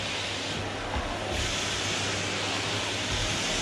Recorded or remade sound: recorded